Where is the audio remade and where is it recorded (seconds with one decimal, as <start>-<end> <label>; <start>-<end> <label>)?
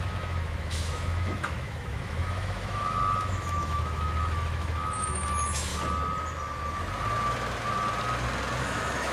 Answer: 0.0-5.7 remade; 5.7-8.6 recorded; 8.6-9.1 remade